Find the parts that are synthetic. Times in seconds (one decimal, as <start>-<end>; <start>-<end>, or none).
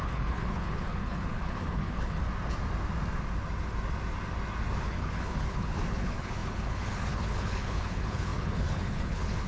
0.0-2.2; 4.8-9.5